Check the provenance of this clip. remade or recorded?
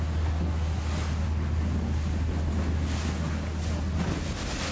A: recorded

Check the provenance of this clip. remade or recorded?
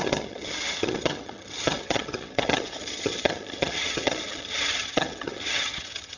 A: remade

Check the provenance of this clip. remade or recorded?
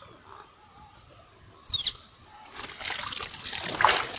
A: recorded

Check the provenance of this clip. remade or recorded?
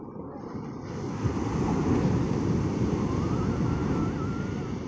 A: recorded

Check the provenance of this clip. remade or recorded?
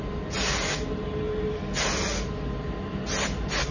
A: recorded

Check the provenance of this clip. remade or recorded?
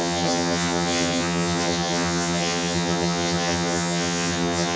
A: remade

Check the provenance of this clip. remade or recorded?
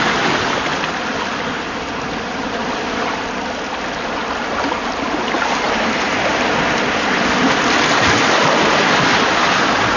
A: recorded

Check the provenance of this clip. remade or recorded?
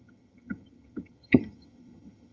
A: remade